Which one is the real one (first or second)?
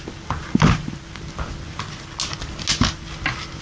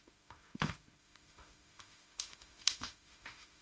first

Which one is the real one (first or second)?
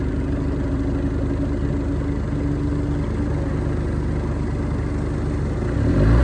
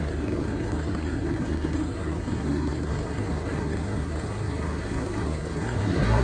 first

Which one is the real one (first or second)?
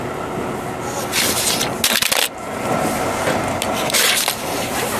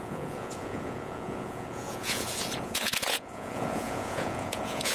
first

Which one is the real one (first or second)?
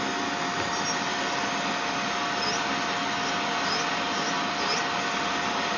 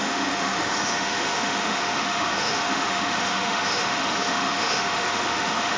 first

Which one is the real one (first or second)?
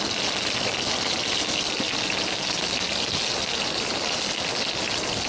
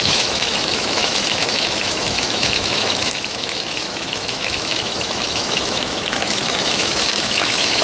first